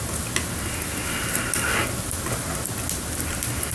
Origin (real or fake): real